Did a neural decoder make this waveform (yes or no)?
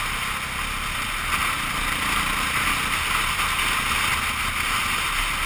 no